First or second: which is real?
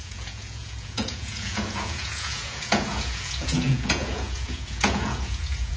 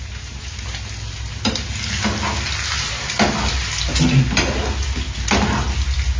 second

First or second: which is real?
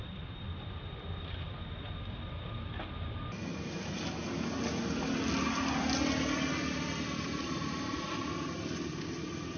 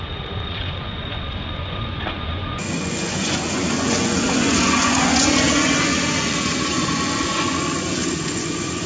first